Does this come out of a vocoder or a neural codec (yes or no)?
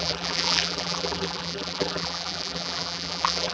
yes